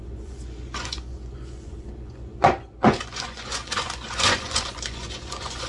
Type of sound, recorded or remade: remade